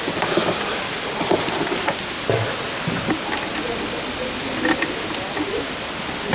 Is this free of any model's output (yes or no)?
yes